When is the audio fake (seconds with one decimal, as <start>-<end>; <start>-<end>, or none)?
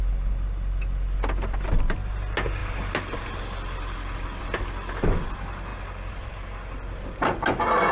none